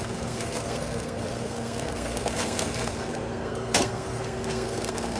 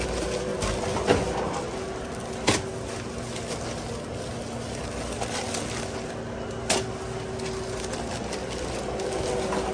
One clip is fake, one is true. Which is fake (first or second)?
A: first